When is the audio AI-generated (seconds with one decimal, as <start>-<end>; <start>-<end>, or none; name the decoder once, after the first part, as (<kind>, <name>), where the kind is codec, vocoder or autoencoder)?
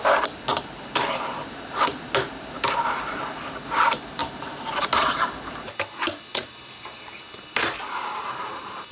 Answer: 0.0-8.9 (vocoder, BigVGAN v2)